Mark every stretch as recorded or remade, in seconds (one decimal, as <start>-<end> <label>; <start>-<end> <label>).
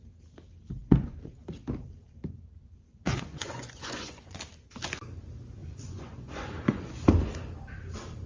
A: 0.0-0.8 recorded; 0.8-1.3 remade; 1.3-2.9 recorded; 2.9-4.4 remade; 4.4-5.6 recorded; 5.6-6.9 remade; 6.9-8.3 recorded